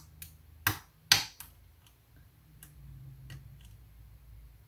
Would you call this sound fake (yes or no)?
no